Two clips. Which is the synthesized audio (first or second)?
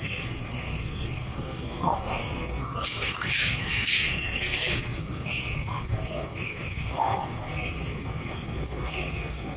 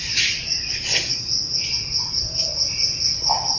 first